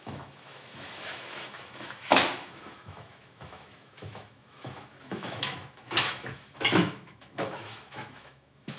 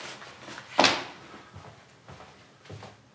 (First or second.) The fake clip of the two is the first